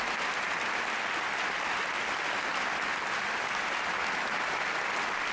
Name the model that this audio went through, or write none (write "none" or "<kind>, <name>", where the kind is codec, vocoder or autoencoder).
none